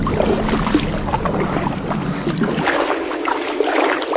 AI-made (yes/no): no